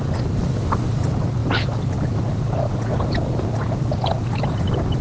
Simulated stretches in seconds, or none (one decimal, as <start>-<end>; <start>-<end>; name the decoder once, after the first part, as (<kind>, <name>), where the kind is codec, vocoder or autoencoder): none